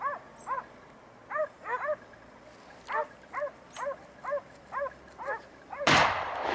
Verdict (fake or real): real